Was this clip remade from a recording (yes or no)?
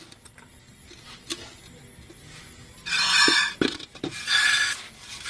no